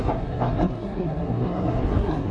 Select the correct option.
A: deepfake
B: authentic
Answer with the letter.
A